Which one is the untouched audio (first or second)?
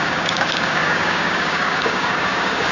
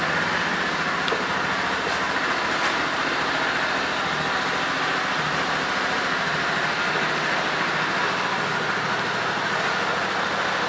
second